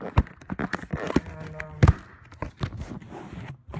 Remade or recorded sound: recorded